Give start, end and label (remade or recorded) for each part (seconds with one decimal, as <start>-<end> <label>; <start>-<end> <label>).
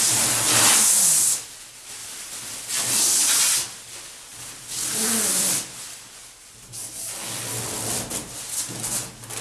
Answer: 0.0-2.0 recorded; 2.0-3.1 remade; 3.1-4.3 recorded; 4.3-4.9 remade; 4.9-6.2 recorded; 6.2-6.9 remade; 6.9-9.4 recorded